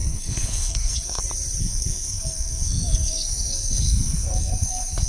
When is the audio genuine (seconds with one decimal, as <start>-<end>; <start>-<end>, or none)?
1.2-1.6